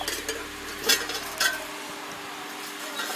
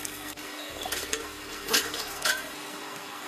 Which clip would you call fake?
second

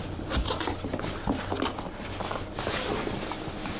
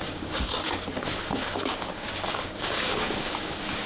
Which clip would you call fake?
second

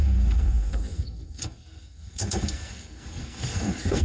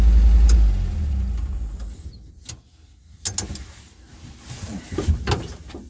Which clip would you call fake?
first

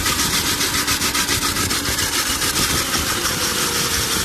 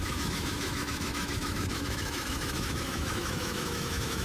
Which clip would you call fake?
second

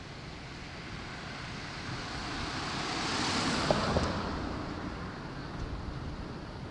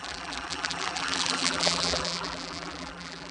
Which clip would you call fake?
second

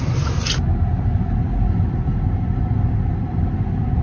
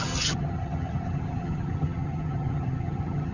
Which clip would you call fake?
second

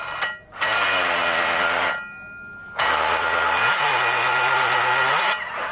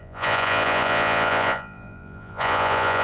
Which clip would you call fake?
second